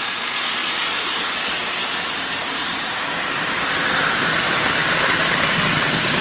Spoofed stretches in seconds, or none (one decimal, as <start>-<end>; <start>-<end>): 4.8-5.5